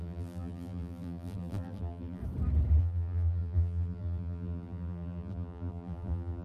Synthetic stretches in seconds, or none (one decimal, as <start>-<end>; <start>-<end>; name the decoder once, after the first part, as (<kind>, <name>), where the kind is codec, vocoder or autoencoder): 0.0-2.2 (vocoder, BigVGAN v2); 2.8-6.4